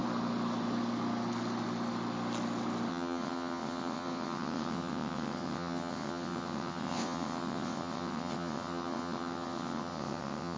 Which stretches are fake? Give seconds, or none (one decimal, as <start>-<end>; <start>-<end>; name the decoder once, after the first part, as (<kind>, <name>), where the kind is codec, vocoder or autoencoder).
2.9-10.6 (vocoder, WaveNeXt)